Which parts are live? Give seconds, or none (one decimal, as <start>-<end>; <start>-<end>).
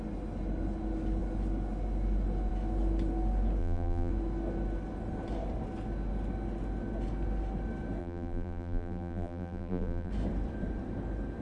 0.0-3.6; 4.1-8.0; 10.1-11.4